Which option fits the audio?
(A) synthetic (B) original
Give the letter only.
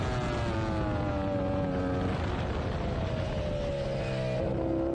B